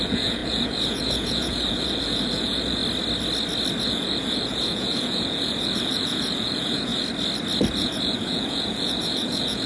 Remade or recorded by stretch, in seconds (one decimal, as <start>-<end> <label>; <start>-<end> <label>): 0.0-2.8 remade; 2.8-3.8 recorded; 3.8-6.9 remade; 6.9-7.7 recorded; 7.7-9.7 remade